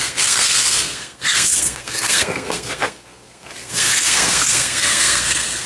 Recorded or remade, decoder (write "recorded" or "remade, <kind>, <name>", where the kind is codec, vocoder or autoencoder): remade, codec, SNAC